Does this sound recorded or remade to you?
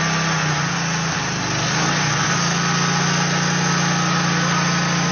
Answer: recorded